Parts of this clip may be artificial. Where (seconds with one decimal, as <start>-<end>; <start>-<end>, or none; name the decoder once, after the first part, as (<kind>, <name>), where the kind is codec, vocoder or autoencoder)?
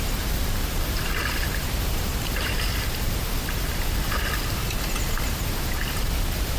0.0-2.7 (vocoder, BigVGAN v2); 5.1-6.6